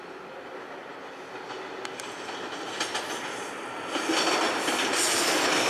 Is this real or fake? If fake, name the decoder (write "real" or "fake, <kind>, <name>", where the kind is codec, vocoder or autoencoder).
real